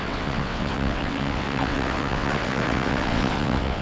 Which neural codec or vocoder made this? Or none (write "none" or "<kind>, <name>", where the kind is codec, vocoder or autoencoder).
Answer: vocoder, WaveNeXt